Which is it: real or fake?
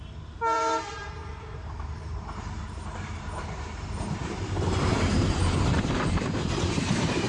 fake